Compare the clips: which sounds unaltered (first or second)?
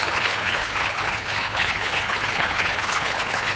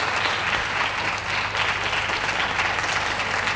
second